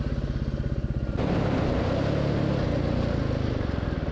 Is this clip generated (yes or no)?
no